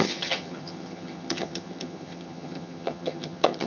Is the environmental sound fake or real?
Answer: fake